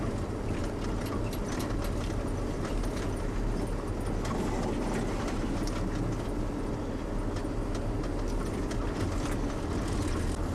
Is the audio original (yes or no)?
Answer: yes